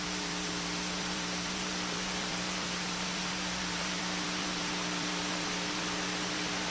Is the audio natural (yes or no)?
no